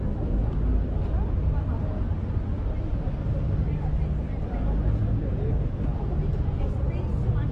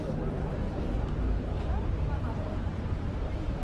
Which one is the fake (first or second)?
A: second